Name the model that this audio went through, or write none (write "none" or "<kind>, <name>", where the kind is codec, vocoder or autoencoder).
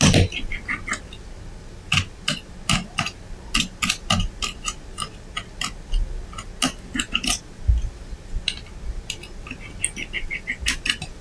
none